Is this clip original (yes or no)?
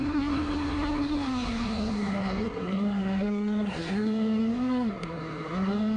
no